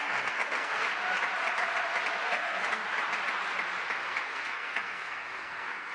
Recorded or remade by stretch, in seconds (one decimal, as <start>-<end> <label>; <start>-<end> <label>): 0.0-0.9 remade; 0.9-2.2 recorded; 2.2-2.8 remade; 2.8-4.0 recorded; 4.0-5.9 remade